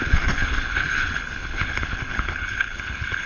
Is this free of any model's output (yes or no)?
no